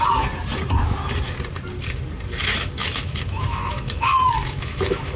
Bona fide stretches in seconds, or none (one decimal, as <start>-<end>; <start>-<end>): 0.0-2.4